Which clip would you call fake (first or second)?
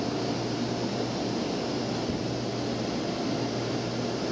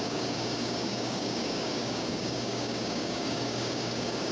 second